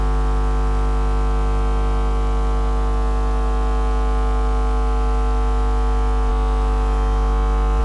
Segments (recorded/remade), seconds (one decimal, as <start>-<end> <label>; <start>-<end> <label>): 0.0-6.3 recorded; 6.3-7.8 remade